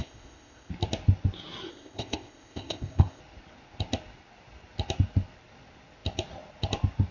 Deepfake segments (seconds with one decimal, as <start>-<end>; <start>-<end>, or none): 0.0-0.7; 1.7-3.2